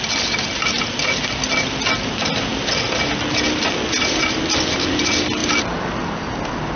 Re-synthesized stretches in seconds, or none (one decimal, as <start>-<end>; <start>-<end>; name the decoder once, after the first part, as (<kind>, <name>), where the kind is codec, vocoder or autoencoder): none